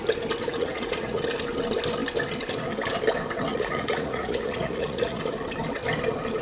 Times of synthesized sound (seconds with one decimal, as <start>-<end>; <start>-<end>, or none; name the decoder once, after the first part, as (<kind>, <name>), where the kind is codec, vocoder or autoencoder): 0.4-1.2 (vocoder, Vocos); 3.5-5.2